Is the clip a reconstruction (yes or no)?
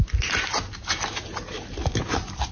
no